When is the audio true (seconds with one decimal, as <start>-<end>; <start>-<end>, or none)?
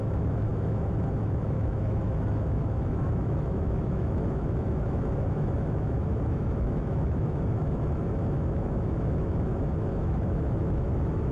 none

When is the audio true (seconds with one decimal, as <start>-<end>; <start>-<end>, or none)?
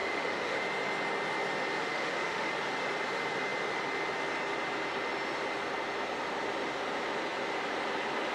0.6-1.8; 2.5-8.3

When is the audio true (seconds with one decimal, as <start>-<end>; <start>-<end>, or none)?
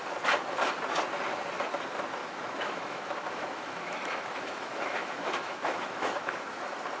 0.0-2.2; 6.4-7.0